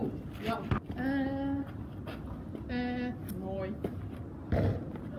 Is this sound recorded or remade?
recorded